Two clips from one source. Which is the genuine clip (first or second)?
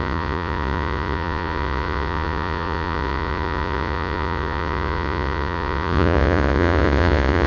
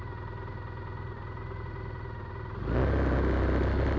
second